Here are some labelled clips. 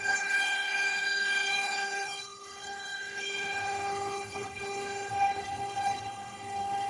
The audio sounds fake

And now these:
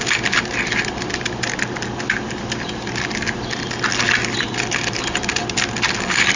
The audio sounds real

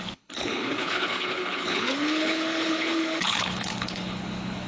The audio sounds fake